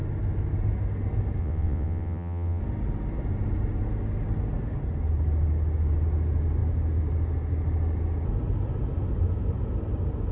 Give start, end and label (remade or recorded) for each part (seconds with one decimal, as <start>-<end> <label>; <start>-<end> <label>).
0.0-1.4 recorded; 1.4-2.6 remade; 2.6-10.3 recorded